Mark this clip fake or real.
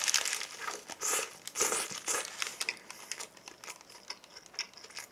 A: real